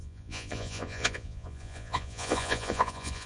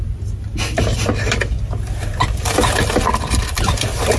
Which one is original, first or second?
second